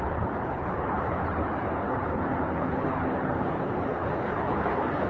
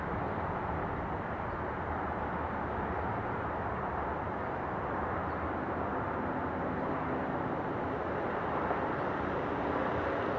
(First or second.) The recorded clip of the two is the second